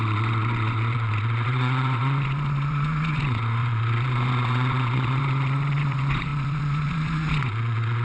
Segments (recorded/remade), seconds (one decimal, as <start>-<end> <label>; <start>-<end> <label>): 0.0-8.0 remade